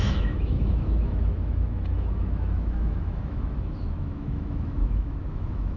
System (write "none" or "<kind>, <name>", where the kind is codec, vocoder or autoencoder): autoencoder, DAC-VAE